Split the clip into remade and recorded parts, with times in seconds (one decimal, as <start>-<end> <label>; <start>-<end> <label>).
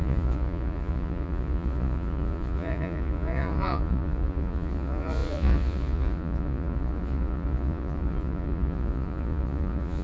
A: 0.0-10.0 remade